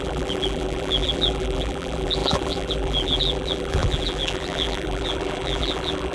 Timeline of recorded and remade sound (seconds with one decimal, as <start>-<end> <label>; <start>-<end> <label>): 0.0-6.1 remade